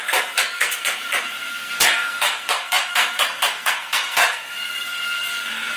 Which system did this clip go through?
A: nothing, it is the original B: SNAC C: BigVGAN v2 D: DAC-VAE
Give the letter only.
B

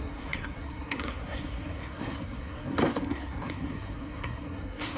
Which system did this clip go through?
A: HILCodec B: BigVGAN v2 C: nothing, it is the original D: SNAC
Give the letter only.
D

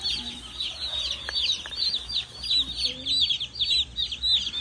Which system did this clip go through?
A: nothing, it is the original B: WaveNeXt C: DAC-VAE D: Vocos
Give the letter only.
A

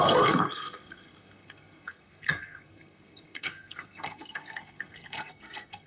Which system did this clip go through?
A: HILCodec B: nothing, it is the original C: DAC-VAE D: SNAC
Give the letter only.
D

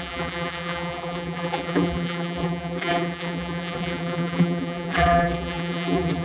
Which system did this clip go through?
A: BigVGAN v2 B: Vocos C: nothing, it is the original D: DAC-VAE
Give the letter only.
A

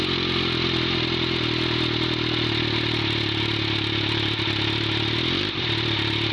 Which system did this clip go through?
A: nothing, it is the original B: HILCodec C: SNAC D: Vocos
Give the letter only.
A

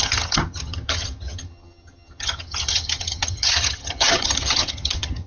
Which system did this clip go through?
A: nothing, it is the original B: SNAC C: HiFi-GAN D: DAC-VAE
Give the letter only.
C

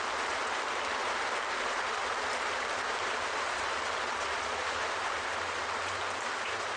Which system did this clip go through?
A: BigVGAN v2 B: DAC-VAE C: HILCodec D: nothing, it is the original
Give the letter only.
A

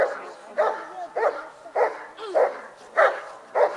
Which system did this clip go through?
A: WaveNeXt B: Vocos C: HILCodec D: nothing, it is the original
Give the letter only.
D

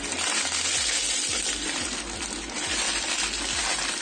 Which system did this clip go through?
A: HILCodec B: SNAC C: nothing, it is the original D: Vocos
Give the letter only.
C